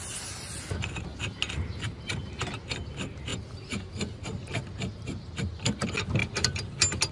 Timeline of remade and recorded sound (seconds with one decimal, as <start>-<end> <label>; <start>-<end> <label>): 0.0-7.1 recorded

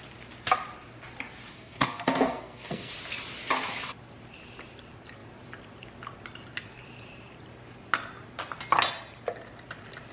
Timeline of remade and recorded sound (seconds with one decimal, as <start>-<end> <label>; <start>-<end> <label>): 0.0-1.5 recorded; 1.5-2.9 remade; 2.9-10.1 recorded

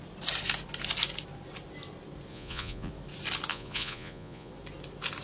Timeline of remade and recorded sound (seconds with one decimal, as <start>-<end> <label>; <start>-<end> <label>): 0.0-2.3 recorded; 2.3-2.9 remade; 2.9-3.5 recorded; 3.5-4.5 remade; 4.5-5.2 recorded

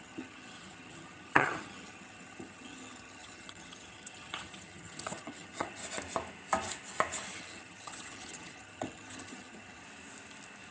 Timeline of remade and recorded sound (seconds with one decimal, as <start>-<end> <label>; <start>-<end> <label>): 0.0-5.8 remade; 5.8-7.3 recorded; 7.3-9.8 remade; 9.8-10.7 recorded

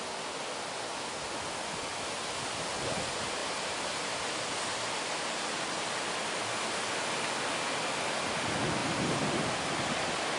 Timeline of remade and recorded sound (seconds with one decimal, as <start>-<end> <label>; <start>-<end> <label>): 0.0-8.8 recorded; 8.8-9.6 remade; 9.6-10.4 recorded

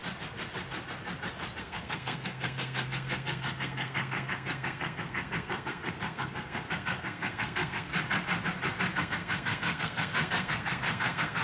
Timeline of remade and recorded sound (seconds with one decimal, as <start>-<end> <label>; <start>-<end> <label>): 0.0-1.6 recorded; 1.6-7.9 remade; 7.9-9.0 recorded; 9.0-11.4 remade

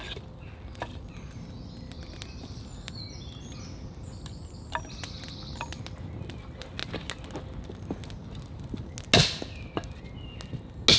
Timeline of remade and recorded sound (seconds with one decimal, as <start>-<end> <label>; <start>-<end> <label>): 0.0-11.0 recorded

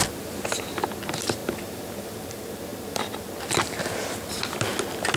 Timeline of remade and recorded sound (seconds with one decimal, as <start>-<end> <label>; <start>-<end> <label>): 0.0-5.2 recorded